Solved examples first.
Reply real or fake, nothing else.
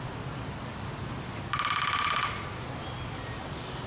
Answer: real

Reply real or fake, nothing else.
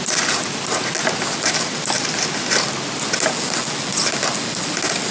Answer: real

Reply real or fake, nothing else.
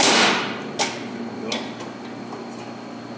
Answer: real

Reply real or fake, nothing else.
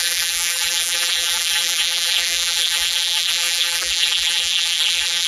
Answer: fake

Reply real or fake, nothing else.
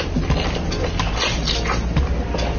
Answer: real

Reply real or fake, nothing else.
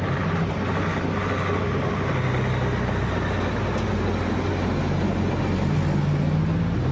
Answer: real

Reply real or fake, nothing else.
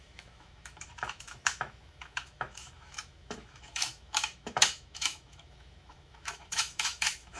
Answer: fake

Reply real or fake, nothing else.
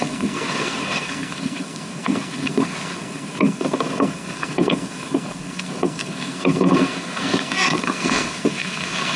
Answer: fake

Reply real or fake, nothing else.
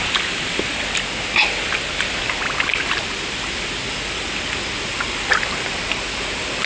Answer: real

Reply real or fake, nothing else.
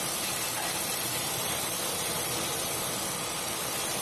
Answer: real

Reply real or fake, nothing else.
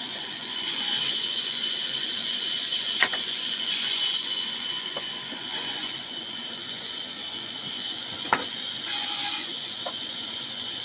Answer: fake